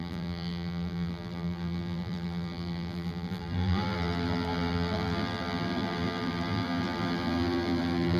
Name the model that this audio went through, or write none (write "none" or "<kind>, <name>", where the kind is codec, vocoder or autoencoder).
vocoder, BigVGAN v2